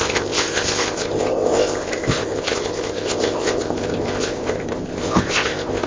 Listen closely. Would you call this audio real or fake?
fake